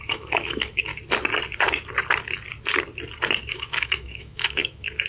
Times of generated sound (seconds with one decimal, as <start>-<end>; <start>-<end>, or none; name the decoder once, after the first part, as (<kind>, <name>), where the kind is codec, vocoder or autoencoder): 0.0-0.9 (autoencoder, DAC-VAE); 3.5-5.1